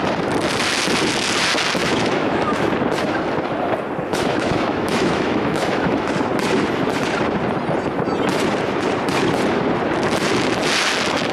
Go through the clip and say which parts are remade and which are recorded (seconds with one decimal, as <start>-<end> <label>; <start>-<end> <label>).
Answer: 0.0-1.8 recorded; 1.8-2.7 remade; 2.7-4.1 recorded; 4.1-6.1 remade; 6.1-11.3 recorded